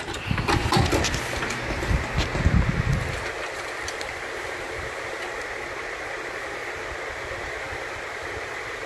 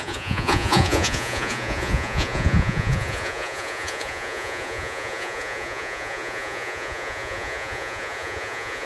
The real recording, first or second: first